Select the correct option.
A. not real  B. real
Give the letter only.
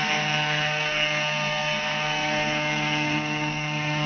A